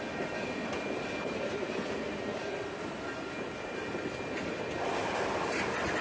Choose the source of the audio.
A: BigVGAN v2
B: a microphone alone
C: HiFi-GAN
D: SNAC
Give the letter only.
B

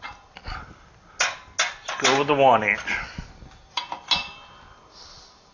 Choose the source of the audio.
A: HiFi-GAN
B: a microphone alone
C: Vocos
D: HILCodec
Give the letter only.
B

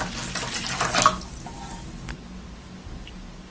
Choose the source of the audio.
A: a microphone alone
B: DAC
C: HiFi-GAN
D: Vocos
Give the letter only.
A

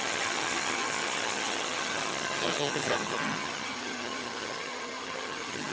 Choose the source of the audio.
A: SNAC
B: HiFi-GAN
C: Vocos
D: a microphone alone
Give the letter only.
B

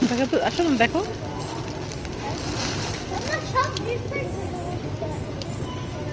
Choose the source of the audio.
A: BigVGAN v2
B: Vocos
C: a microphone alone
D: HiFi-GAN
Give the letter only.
C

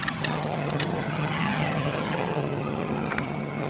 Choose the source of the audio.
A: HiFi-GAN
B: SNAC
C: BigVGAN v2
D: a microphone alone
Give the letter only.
A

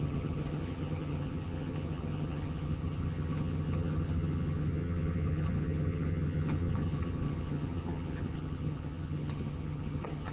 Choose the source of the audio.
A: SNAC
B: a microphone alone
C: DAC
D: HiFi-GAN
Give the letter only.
D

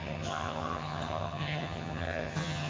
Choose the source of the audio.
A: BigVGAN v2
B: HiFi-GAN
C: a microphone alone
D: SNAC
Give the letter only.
B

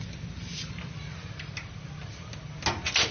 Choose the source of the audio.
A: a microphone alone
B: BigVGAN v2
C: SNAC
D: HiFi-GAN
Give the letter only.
A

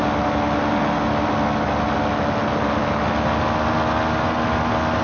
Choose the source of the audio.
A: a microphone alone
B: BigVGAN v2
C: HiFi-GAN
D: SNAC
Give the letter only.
A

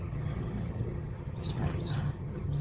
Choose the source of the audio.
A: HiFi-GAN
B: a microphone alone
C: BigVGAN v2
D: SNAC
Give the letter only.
A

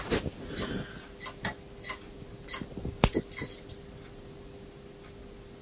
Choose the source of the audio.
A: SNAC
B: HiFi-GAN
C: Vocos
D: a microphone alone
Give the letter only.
D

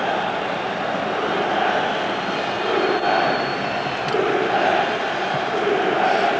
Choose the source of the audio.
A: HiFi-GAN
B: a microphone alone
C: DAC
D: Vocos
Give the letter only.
B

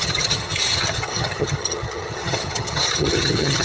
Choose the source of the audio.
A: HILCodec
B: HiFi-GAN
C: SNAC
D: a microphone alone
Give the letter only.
B